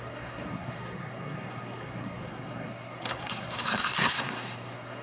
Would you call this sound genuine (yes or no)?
no